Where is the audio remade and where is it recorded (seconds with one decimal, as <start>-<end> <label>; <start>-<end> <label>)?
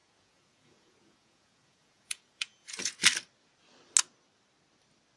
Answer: 0.0-3.0 remade; 3.0-5.2 recorded